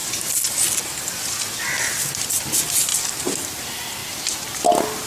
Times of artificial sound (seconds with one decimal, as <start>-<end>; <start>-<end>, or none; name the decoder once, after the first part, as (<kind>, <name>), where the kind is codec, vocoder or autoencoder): 2.9-3.4 (vocoder, BigVGAN v2)